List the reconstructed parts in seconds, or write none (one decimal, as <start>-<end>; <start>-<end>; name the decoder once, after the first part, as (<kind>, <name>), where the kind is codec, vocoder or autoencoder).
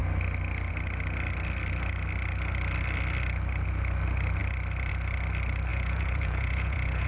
5.7-7.1 (vocoder, Vocos)